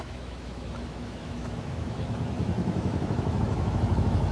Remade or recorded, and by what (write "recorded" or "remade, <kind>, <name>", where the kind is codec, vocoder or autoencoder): remade, autoencoder, DAC-VAE